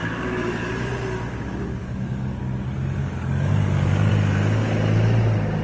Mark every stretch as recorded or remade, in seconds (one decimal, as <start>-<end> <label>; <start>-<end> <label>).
0.0-0.7 remade; 0.7-1.8 recorded; 1.8-2.4 remade; 2.4-3.0 recorded; 3.0-4.1 remade; 4.1-5.6 recorded